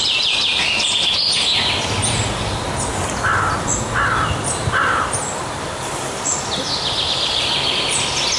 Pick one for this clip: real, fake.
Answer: real